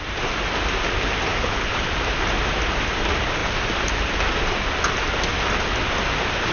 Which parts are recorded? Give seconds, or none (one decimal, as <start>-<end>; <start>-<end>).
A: 0.0-1.3; 1.9-6.5